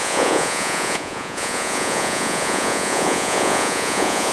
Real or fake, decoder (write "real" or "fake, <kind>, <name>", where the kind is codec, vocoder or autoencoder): fake, vocoder, Vocos